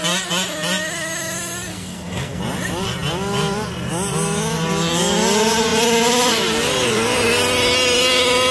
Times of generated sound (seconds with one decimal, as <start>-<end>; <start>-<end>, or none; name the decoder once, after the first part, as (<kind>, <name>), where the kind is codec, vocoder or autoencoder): 1.7-2.4 (codec, SNAC)